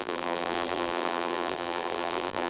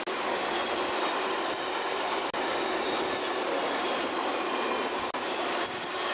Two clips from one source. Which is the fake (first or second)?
first